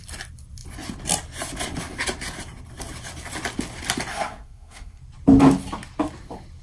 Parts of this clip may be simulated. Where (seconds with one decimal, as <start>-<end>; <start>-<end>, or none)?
4.1-5.0